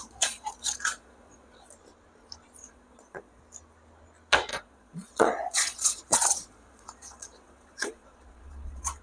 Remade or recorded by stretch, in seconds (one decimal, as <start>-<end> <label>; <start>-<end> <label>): 0.0-1.7 remade; 1.7-2.6 recorded; 2.6-3.4 remade; 3.4-4.5 recorded; 4.5-9.0 remade